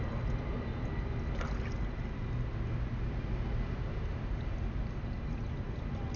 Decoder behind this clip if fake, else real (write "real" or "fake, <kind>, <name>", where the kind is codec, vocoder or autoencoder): real